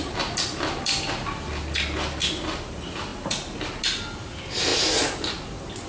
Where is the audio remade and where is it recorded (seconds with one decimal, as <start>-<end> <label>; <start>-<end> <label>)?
0.0-5.9 recorded